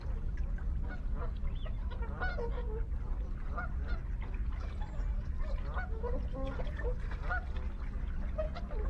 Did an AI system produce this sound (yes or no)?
no